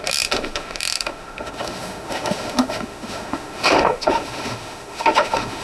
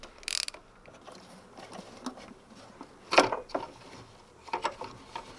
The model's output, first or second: first